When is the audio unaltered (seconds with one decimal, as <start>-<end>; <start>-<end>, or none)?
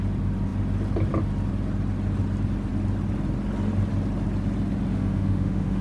0.0-4.9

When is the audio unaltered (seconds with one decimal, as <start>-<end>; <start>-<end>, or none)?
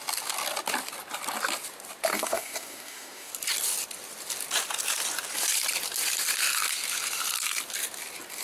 0.0-2.1; 3.3-8.4